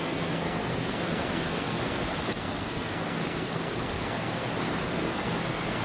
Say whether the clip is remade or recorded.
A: remade